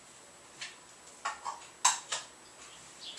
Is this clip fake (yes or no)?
no